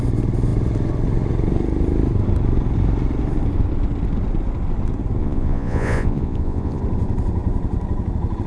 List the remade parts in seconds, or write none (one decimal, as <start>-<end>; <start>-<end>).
5.2-6.8